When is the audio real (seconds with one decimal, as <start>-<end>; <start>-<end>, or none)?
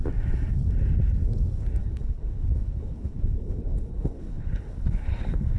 0.0-1.8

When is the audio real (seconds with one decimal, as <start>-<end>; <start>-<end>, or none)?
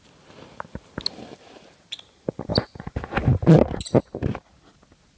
0.0-5.2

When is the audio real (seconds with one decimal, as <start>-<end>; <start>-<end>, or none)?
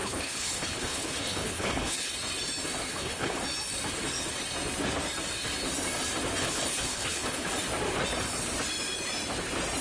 2.1-2.9; 3.4-6.4; 7.5-9.8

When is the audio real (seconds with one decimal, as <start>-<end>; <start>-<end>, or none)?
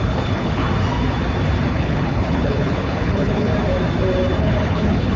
0.6-1.7; 3.5-4.4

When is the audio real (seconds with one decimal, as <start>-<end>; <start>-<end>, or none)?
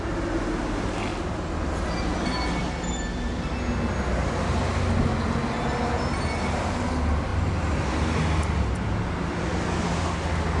0.0-10.6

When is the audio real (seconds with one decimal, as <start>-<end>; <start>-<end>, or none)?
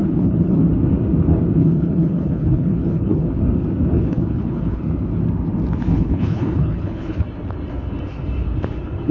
0.6-1.6; 3.4-3.9; 4.8-5.9; 7.2-9.1